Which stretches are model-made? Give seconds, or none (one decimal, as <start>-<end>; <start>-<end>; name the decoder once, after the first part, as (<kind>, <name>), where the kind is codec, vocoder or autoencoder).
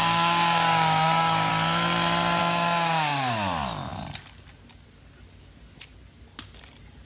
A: 0.0-1.5 (codec, DAC); 2.4-3.3